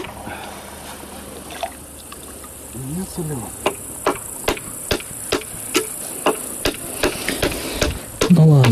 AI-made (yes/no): no